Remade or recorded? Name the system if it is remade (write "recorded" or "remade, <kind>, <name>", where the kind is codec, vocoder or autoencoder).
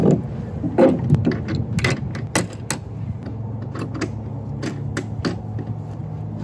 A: recorded